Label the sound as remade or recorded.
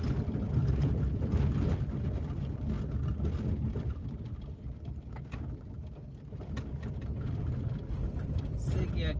recorded